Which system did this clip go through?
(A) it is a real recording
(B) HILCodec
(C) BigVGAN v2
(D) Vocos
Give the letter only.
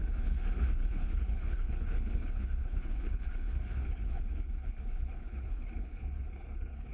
B